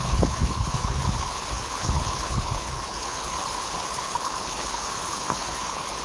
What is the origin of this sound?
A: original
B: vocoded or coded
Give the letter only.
B